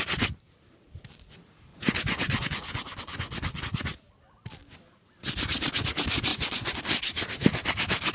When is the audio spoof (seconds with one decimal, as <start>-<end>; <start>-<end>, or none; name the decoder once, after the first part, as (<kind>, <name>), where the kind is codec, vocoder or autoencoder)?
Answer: 1.7-3.6 (vocoder, Vocos); 6.3-6.8